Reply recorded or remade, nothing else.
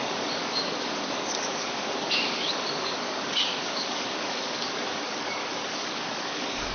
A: remade